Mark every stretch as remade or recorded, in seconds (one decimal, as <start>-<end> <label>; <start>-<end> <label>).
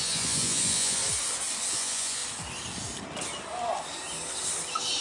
0.0-1.0 remade; 1.0-1.7 recorded; 1.7-2.2 remade; 2.2-5.0 recorded